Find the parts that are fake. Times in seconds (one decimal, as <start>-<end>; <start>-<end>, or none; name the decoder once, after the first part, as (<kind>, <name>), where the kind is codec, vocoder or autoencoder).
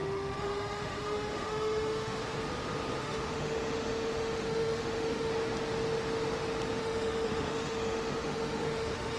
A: 0.0-2.2 (autoencoder, DAC-VAE); 3.0-5.3; 6.8-9.2